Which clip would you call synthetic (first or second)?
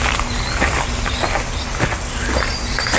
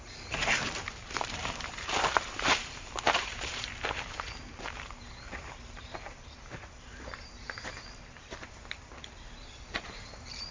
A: second